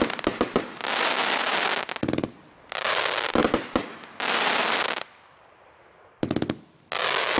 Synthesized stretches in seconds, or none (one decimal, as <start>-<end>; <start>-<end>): none